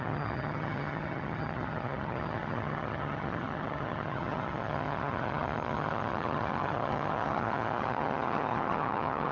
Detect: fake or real fake